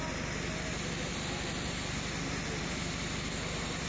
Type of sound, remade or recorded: recorded